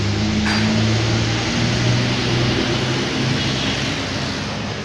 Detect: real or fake real